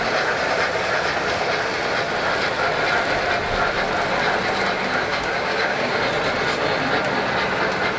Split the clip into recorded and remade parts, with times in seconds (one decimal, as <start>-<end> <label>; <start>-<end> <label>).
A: 0.0-5.1 recorded; 5.1-5.9 remade; 5.9-8.0 recorded